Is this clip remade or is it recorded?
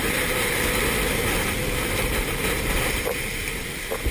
recorded